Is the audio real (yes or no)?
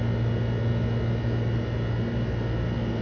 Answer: yes